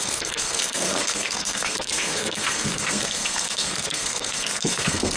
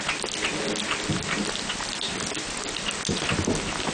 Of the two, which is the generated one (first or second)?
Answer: first